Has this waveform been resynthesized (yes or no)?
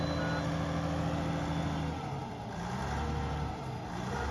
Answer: no